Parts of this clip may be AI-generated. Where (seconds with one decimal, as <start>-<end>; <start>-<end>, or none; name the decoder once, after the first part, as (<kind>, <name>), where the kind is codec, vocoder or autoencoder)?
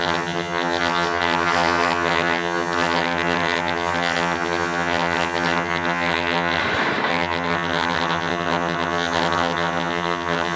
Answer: 0.0-6.6 (vocoder, HiFi-GAN); 7.1-10.6